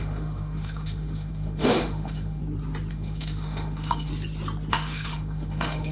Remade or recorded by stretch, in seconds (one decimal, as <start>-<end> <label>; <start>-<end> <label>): 0.0-2.4 remade; 2.4-2.9 recorded; 2.9-4.1 remade; 4.1-4.7 recorded; 4.7-5.9 remade